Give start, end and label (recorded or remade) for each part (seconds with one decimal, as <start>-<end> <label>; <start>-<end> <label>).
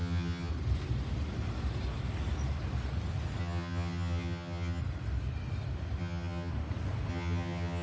0.0-0.5 remade; 0.5-3.4 recorded; 3.4-4.8 remade; 4.8-6.0 recorded; 6.0-6.5 remade; 6.5-7.1 recorded; 7.1-7.8 remade